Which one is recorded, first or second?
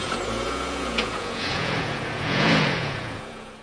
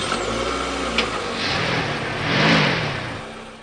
second